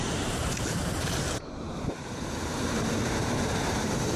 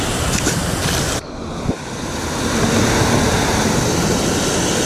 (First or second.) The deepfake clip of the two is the first